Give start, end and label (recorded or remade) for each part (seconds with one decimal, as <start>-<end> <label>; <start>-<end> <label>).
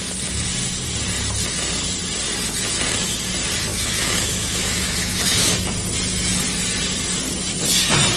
0.0-3.7 recorded; 3.7-5.5 remade; 5.5-8.2 recorded